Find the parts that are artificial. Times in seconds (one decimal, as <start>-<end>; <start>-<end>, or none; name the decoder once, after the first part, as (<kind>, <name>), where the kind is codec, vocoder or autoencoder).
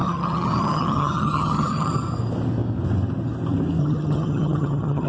0.0-1.9 (vocoder, HiFi-GAN); 3.8-5.1